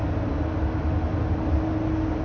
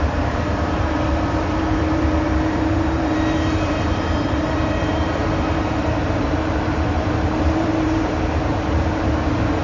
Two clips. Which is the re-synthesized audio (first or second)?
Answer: second